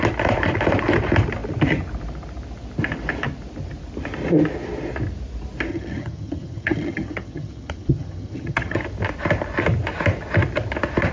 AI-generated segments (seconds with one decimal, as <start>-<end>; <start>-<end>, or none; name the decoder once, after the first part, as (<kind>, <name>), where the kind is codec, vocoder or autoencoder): 5.7-8.8 (vocoder, HiFi-GAN)